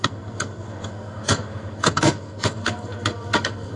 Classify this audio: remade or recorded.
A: remade